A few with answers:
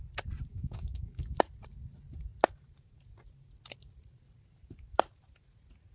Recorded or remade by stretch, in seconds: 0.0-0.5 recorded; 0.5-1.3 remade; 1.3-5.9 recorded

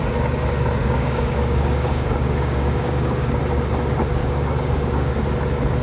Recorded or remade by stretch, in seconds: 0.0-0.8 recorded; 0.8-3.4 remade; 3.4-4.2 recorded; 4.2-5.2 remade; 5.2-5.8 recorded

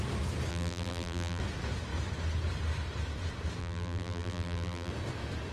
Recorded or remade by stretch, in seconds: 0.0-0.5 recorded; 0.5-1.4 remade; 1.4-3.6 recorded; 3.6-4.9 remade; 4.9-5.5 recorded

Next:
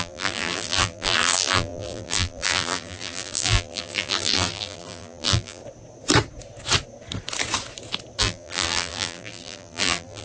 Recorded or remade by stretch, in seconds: 0.0-5.6 remade; 5.6-8.2 recorded; 8.2-10.2 remade